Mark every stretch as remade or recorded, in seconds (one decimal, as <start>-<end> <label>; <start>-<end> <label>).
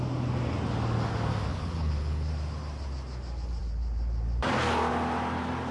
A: 0.0-1.5 recorded; 1.5-2.3 remade; 2.3-5.7 recorded